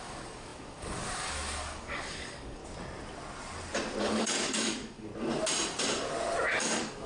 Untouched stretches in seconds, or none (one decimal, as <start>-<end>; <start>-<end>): 2.6-4.0; 5.1-6.6